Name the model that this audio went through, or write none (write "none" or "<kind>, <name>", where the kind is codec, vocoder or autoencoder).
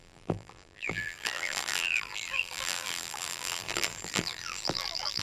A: vocoder, BigVGAN v2